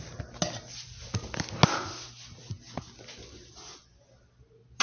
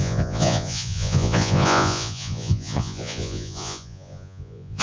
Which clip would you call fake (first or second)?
second